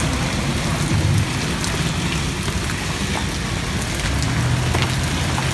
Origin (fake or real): real